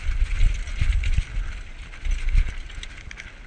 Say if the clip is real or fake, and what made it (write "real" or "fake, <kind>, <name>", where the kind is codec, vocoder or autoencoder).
real